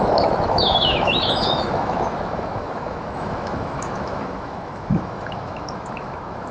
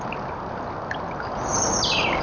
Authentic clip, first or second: second